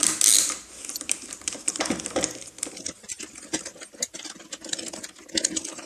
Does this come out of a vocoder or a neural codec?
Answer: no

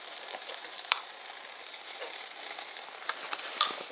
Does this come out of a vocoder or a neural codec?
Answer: yes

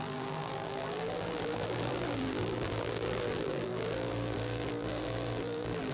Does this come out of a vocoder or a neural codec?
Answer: yes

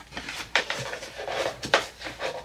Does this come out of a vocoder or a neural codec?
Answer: yes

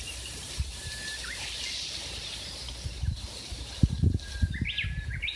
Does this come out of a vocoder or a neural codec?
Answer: yes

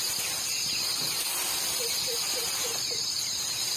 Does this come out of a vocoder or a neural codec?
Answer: no